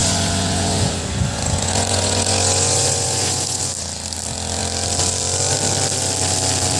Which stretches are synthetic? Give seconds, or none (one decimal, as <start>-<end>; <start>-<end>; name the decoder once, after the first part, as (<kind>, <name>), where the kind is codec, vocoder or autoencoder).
0.0-3.6 (vocoder, Vocos)